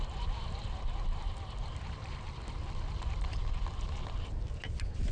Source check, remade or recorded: recorded